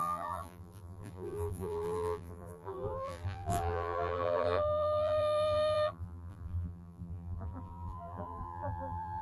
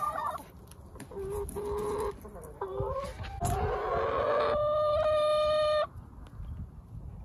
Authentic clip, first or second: second